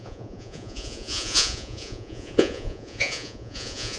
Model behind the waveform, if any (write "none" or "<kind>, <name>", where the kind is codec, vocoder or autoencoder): vocoder, Vocos